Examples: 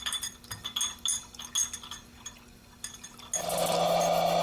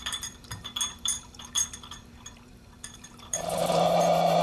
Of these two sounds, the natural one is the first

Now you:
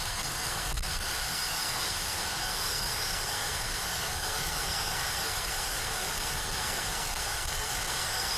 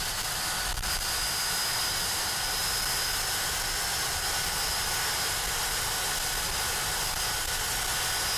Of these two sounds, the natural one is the second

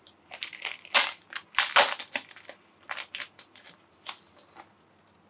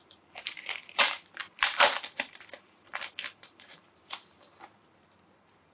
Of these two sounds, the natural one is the first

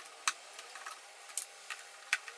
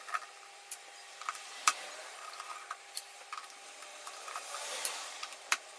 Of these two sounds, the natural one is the first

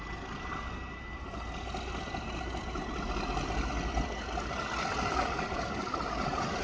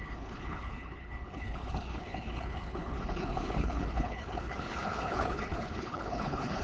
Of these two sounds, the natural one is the first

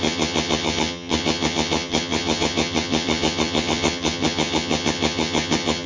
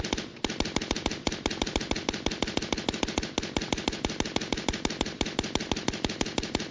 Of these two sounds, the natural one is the second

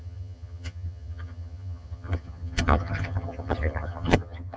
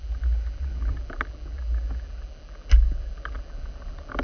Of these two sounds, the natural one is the second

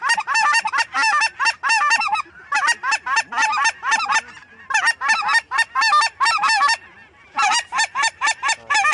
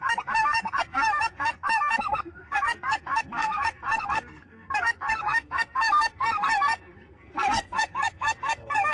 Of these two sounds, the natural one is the first